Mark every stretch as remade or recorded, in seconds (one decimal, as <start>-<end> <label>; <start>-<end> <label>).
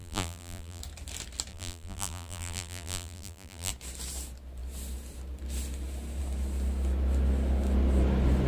0.0-0.8 remade; 0.8-1.5 recorded; 1.5-3.7 remade; 3.7-8.5 recorded